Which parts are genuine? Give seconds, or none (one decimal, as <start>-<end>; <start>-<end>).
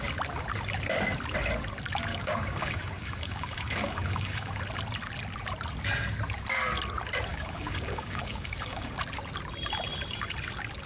0.0-2.1; 4.6-7.3; 9.0-10.9